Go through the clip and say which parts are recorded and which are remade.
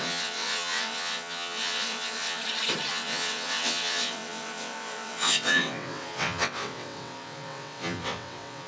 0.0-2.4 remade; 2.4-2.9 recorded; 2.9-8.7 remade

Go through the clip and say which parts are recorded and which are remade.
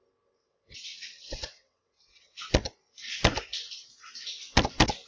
0.0-0.4 recorded; 0.4-2.5 remade; 2.5-5.1 recorded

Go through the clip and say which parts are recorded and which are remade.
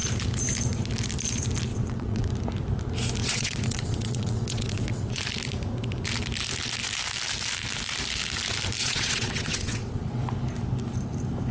0.0-1.7 recorded; 1.7-2.3 remade; 2.3-3.2 recorded; 3.2-5.2 remade; 5.2-8.8 recorded; 8.8-10.2 remade; 10.2-11.5 recorded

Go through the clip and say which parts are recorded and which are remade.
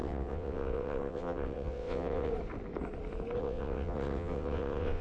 0.0-2.3 remade; 2.3-3.4 recorded; 3.4-5.0 remade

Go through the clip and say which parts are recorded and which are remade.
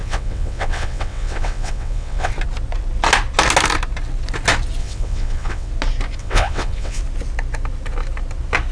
0.0-2.3 remade; 2.3-4.8 recorded; 4.8-5.7 remade; 5.7-6.2 recorded; 6.2-7.0 remade; 7.0-8.7 recorded